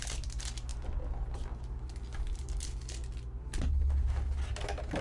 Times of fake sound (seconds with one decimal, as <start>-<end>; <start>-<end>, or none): none